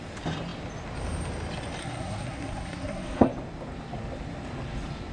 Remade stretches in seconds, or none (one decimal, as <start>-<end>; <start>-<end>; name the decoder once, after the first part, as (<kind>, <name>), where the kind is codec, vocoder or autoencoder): 1.8-3.3 (codec, SNAC)